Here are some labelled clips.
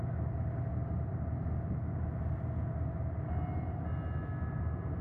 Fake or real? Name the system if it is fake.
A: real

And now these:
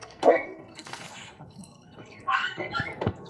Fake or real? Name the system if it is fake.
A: fake, codec, SNAC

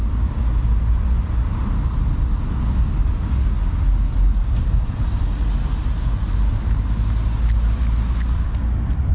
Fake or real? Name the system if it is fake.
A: real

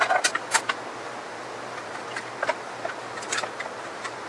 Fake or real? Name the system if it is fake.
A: real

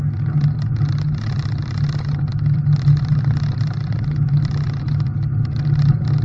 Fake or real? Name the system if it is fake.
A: real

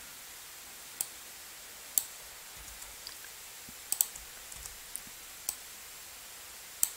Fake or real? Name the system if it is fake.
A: real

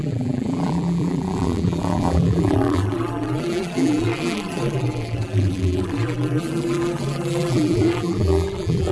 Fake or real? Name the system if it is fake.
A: fake, vocoder, BigVGAN v2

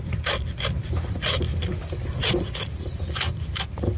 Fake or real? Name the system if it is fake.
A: real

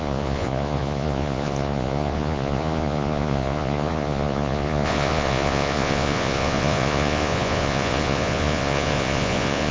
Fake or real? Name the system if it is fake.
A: fake, vocoder, Vocos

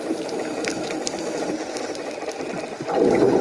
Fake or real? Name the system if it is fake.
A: real